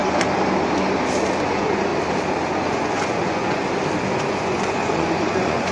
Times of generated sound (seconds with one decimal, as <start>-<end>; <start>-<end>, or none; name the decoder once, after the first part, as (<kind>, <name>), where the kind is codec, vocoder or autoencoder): 1.4-1.9 (vocoder, Vocos); 2.5-3.6; 4.2-5.7